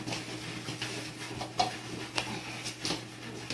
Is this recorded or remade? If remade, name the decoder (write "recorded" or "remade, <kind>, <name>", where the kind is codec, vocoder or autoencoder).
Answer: recorded